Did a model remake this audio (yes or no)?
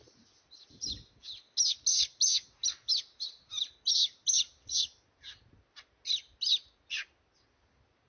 no